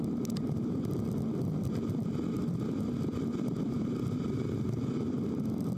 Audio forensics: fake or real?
real